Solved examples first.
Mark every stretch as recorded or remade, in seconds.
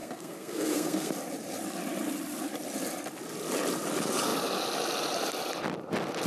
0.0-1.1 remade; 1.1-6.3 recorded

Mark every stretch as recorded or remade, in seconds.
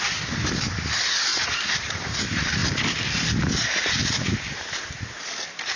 0.0-1.3 recorded; 1.3-2.2 remade; 2.2-5.8 recorded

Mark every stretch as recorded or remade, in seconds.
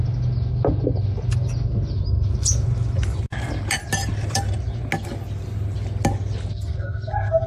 0.0-4.0 recorded; 4.0-4.6 remade; 4.6-7.5 recorded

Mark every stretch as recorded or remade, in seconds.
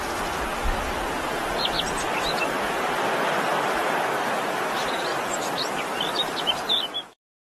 0.0-1.4 recorded; 1.4-2.3 remade; 2.3-3.5 recorded; 3.5-4.6 remade; 4.6-5.1 recorded; 5.1-7.4 remade